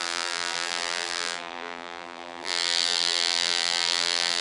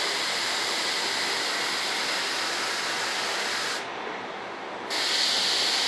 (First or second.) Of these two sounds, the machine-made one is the first